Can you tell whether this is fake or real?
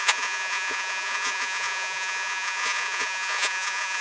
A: fake